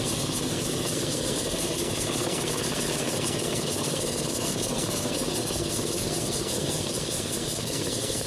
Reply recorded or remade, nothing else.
remade